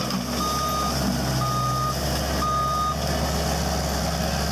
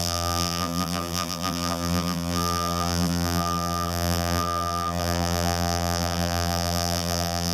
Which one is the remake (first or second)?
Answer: second